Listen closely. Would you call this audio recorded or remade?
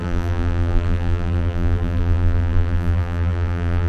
remade